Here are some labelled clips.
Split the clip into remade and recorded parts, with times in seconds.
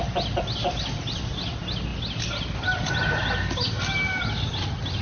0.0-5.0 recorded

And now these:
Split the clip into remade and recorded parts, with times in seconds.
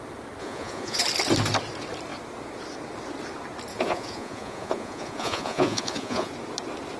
0.0-0.4 recorded; 0.4-1.0 remade; 1.0-3.7 recorded; 3.7-6.3 remade; 6.3-7.0 recorded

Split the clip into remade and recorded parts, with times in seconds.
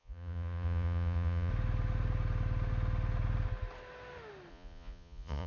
0.0-1.5 remade; 1.5-4.5 recorded; 4.5-5.5 remade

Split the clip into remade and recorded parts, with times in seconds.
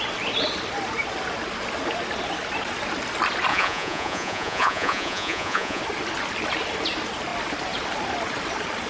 0.0-3.5 recorded; 3.5-5.8 remade; 5.8-8.9 recorded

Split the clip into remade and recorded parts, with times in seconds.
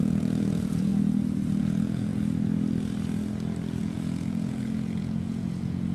0.0-0.9 remade; 0.9-1.6 recorded; 1.6-2.1 remade; 2.1-3.8 recorded; 3.8-5.9 remade